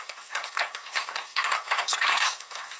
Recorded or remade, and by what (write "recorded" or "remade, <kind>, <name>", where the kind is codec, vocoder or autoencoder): remade, codec, SNAC